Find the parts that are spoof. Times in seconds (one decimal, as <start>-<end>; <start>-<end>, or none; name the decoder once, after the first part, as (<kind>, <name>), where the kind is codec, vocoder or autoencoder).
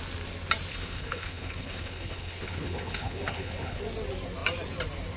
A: 0.7-3.8 (codec, HILCodec)